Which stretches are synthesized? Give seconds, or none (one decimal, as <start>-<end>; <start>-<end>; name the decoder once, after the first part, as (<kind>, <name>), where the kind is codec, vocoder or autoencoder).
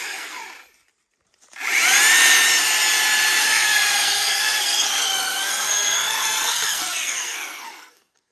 0.0-0.4 (codec, SNAC); 3.4-8.3